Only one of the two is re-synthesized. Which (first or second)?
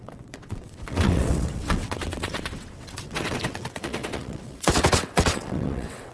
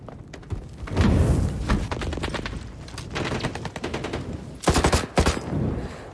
first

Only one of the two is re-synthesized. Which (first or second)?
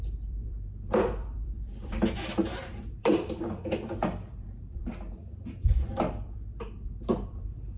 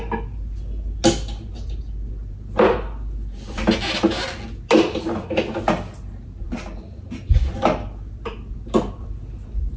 first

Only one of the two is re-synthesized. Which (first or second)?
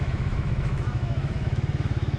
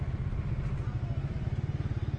first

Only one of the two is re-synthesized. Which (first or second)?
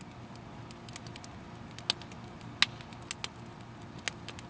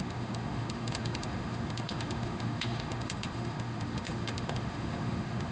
second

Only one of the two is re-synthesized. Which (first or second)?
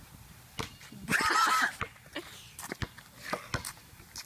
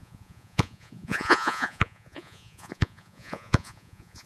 second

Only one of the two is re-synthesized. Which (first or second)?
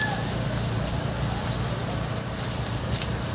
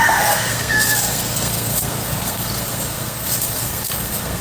second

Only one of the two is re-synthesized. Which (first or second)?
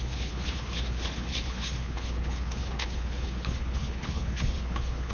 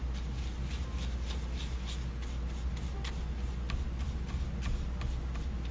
first